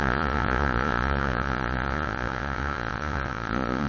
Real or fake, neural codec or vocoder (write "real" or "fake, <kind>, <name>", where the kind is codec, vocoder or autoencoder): fake, vocoder, Vocos